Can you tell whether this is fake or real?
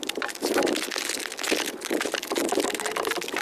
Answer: real